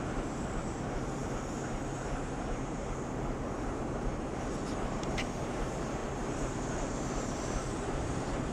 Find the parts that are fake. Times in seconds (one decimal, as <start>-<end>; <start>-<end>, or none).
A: 0.0-8.5